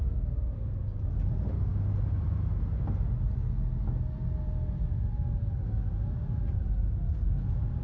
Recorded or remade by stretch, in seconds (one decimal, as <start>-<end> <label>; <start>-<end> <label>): 0.0-7.8 recorded